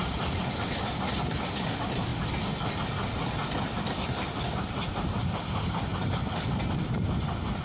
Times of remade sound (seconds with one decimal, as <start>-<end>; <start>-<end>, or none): 0.0-1.4; 2.1-2.7; 5.9-7.1